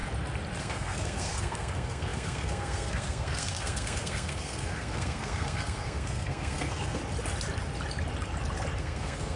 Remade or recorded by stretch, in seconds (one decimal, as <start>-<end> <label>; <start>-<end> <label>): 0.0-0.6 recorded; 0.6-7.0 remade; 7.0-8.8 recorded; 8.8-9.4 remade